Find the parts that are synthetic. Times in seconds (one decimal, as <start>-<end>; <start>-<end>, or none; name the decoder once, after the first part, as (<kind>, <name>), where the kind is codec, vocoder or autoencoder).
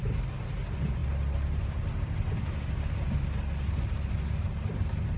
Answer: none